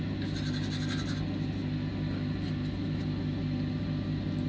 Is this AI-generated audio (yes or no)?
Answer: no